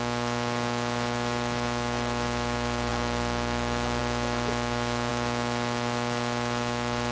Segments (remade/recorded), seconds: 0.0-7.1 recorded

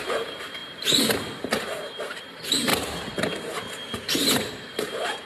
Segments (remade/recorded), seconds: 0.0-0.6 remade; 0.6-2.2 recorded; 2.2-2.7 remade; 2.7-4.1 recorded; 4.1-5.3 remade

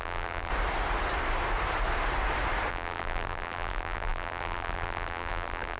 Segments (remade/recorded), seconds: 0.0-0.5 remade; 0.5-2.7 recorded; 2.7-5.8 remade

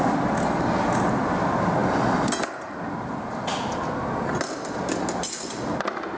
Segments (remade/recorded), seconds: 0.0-6.2 recorded